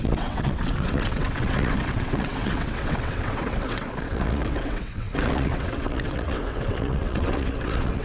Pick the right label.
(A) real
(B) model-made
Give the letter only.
B